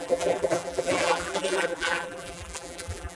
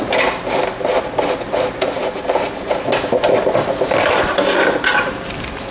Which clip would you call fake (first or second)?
first